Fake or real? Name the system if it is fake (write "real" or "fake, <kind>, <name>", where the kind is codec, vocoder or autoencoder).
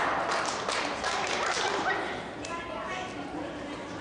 real